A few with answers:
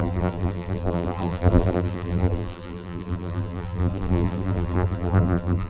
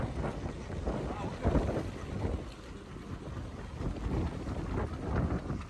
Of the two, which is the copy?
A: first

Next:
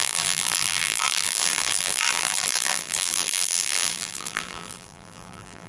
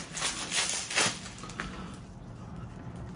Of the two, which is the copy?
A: first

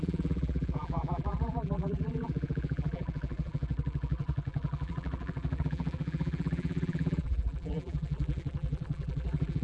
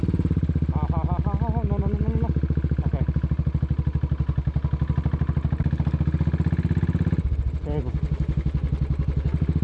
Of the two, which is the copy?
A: first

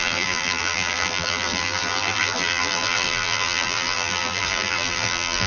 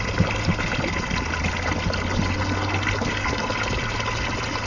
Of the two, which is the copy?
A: first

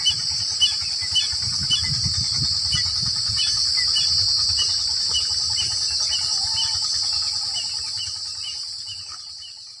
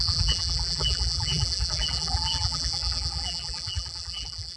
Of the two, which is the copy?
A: second